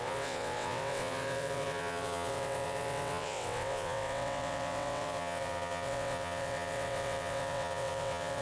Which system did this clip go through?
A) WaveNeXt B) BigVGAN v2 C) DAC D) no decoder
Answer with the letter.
A